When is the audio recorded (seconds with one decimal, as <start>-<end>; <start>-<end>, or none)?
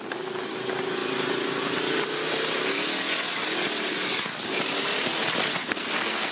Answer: 0.0-5.5